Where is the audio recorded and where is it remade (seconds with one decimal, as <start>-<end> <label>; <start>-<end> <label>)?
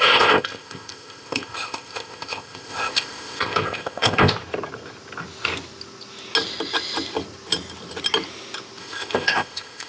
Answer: 0.0-4.3 remade; 4.3-8.8 recorded; 8.8-9.9 remade